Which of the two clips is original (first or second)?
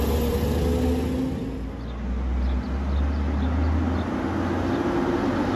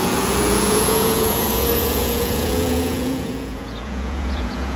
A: first